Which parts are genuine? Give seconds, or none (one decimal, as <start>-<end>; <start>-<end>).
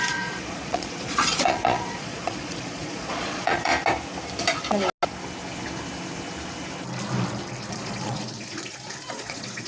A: 3.7-7.7